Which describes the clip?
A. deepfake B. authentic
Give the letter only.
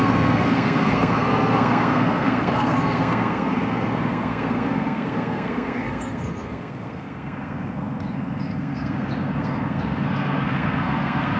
A